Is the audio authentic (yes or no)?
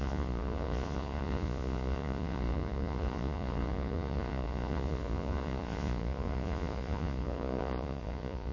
no